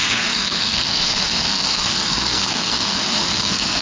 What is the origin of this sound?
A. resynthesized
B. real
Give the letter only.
A